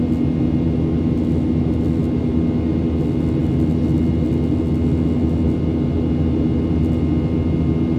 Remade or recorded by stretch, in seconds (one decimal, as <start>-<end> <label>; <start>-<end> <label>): 0.0-8.0 recorded